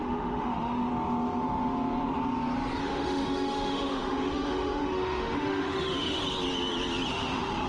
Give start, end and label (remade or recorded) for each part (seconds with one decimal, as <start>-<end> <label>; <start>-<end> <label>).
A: 0.0-0.9 remade; 0.9-2.8 recorded; 2.8-6.2 remade; 6.2-7.1 recorded; 7.1-7.7 remade